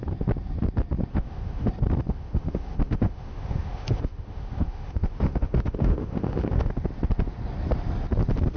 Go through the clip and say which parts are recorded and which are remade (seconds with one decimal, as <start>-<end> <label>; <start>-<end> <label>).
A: 0.0-1.1 recorded; 1.1-1.7 remade; 1.7-2.1 recorded; 2.1-6.7 remade; 6.7-8.6 recorded